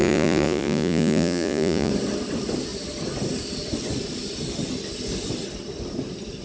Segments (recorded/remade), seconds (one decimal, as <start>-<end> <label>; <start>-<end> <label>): 0.0-1.9 remade; 1.9-6.4 recorded